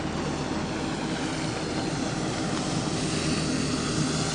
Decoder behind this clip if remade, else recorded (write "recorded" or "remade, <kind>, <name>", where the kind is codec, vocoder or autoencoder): recorded